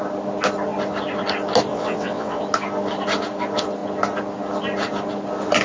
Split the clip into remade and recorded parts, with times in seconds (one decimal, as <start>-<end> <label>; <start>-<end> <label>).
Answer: 0.0-1.7 recorded; 1.7-2.4 remade; 2.4-5.6 recorded